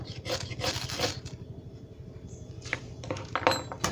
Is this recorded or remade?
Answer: recorded